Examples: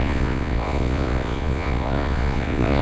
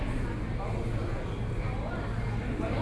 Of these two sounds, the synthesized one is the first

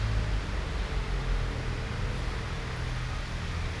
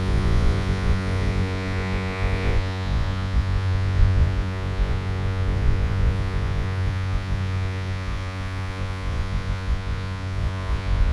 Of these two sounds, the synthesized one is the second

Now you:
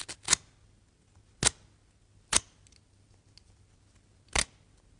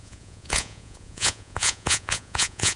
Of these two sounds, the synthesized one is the second